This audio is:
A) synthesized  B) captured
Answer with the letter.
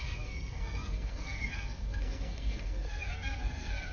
A